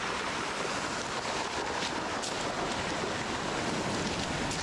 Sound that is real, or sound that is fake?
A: real